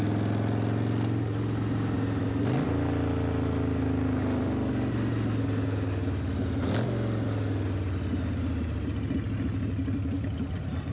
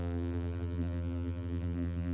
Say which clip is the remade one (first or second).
second